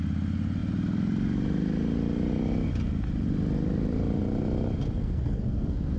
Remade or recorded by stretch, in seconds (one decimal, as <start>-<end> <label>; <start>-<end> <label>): 0.0-5.0 recorded; 5.0-6.0 remade